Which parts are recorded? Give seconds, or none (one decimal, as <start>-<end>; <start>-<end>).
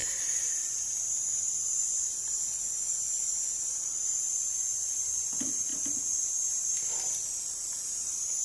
2.2-4.6; 5.7-8.4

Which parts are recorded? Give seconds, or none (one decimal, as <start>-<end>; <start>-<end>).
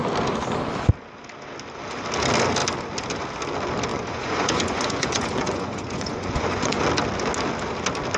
0.0-3.9; 6.8-8.2